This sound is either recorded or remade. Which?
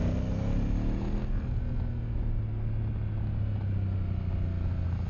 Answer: recorded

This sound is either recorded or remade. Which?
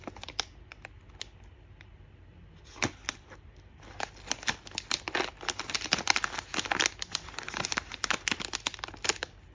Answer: recorded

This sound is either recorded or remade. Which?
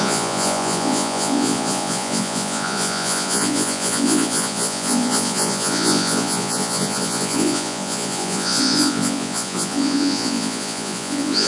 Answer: remade